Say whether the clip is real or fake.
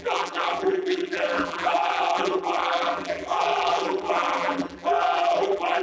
fake